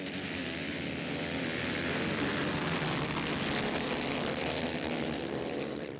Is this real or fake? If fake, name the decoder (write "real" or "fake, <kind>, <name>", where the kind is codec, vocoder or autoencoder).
fake, vocoder, BigVGAN v2